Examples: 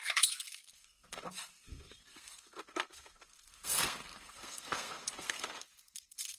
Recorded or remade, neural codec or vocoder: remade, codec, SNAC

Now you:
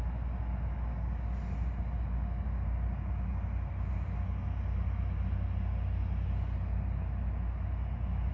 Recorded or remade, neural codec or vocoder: recorded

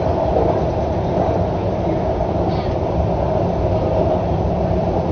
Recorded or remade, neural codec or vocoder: remade, vocoder, BigVGAN v2